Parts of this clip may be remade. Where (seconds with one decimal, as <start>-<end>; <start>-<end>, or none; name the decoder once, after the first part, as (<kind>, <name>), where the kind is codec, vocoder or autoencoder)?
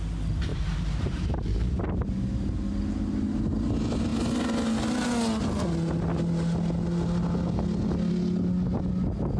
0.5-2.1 (vocoder, BigVGAN v2)